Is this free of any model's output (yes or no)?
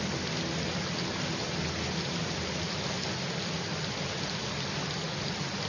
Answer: yes